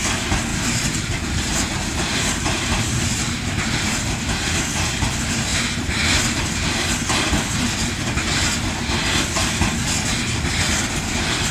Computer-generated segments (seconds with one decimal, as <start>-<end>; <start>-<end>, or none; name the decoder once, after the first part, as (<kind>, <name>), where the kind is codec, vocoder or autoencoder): 0.5-4.2 (vocoder, BigVGAN v2); 5.5-7.3